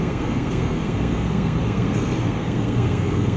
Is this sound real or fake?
fake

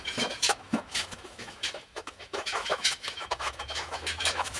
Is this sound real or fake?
fake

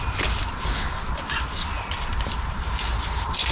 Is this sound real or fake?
real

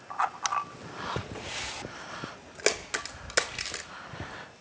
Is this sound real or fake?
real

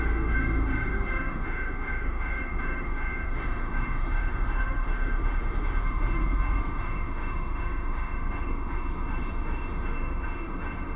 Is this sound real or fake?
fake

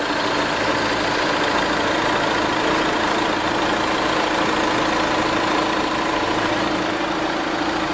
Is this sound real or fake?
real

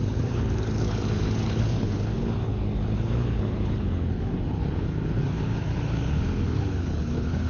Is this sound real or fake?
fake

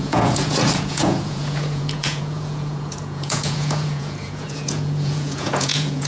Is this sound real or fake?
fake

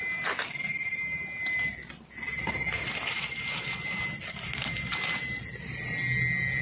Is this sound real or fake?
real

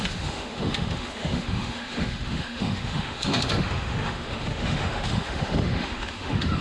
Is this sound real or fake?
fake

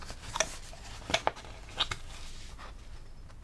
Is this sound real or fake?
real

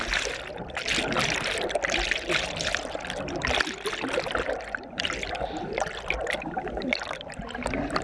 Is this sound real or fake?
real